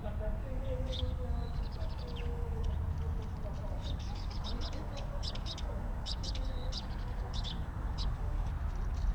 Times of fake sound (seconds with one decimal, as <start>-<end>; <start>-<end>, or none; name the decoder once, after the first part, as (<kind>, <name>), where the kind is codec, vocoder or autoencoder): 0.4-2.7 (codec, DAC); 3.7-8.5